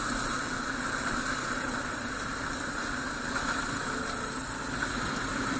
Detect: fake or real real